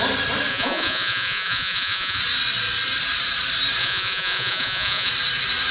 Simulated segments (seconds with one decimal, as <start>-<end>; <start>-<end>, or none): 0.5-2.2; 3.8-5.1